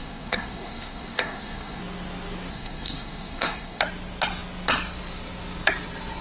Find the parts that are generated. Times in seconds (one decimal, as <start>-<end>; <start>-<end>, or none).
0.0-1.8; 2.5-3.8

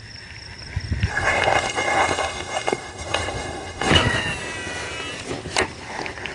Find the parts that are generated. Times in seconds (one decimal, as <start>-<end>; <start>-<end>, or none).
1.1-3.9

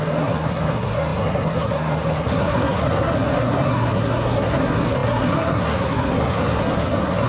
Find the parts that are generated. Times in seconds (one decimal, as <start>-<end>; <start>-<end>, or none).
0.0-7.3

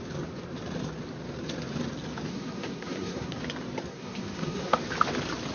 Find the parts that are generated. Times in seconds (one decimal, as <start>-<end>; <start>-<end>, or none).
2.3-3.4; 3.9-4.8

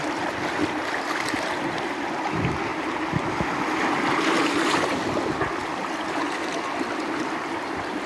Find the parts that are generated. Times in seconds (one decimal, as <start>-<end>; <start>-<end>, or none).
none

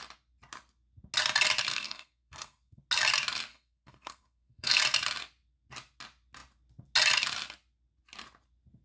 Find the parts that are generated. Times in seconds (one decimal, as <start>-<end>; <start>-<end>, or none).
1.7-2.8; 3.5-4.8

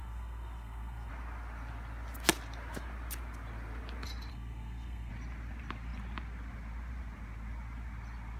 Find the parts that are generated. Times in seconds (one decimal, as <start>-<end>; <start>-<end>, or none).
0.0-1.1; 4.3-5.1